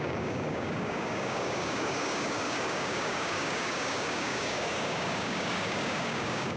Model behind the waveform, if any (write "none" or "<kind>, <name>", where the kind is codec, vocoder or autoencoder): codec, DAC